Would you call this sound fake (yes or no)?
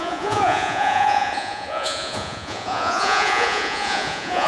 yes